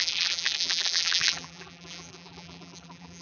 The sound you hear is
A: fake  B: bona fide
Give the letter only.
A